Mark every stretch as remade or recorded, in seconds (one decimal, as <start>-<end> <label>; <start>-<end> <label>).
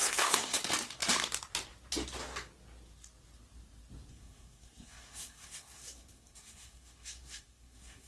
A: 0.0-0.6 remade; 0.6-4.1 recorded; 4.1-8.1 remade